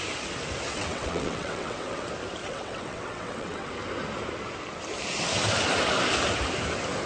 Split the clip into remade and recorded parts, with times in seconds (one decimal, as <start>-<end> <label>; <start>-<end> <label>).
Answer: 0.0-0.7 recorded; 0.7-2.0 remade; 2.0-2.4 recorded; 2.4-3.7 remade; 3.7-7.1 recorded